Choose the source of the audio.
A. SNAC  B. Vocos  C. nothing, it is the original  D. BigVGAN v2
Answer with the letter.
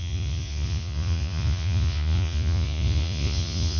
B